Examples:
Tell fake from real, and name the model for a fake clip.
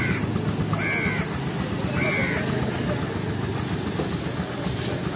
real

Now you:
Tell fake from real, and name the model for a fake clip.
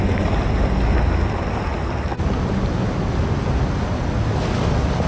real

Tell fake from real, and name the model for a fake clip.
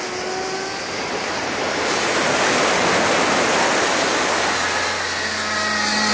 real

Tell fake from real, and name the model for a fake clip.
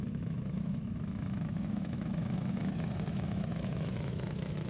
fake, autoencoder, DAC-VAE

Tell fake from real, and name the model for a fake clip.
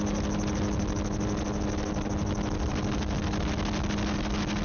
real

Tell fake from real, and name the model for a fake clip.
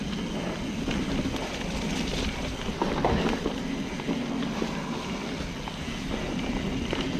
real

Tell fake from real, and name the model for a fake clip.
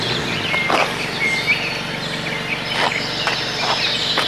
real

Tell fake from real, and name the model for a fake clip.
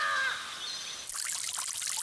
real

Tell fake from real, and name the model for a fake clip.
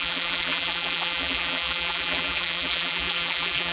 fake, vocoder, BigVGAN v2